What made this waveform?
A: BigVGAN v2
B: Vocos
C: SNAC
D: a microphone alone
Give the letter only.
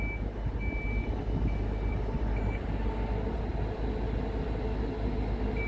D